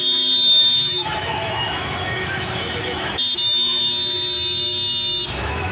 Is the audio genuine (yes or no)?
no